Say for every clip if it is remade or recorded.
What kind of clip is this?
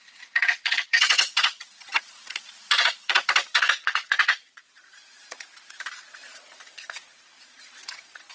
remade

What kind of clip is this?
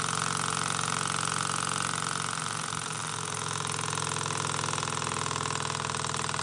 recorded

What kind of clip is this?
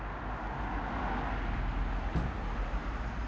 recorded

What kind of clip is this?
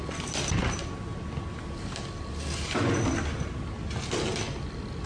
recorded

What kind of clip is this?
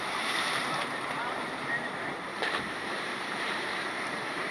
remade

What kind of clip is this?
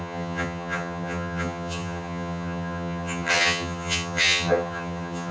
remade